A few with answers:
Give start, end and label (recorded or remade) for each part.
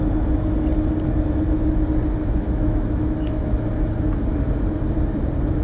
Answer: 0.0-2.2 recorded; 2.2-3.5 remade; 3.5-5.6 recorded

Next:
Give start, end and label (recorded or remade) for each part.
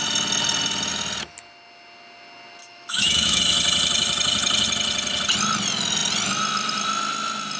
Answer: 0.0-2.6 recorded; 2.6-3.4 remade; 3.4-7.6 recorded